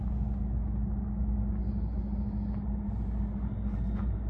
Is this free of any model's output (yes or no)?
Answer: yes